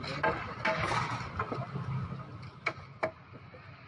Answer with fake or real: real